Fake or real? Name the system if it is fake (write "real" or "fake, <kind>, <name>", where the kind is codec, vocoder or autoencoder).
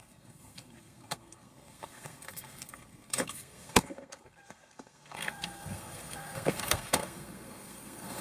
fake, codec, SNAC